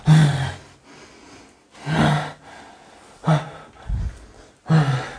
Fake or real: real